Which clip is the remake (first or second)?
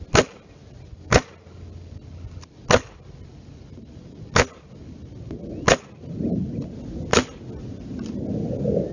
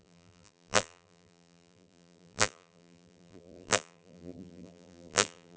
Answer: second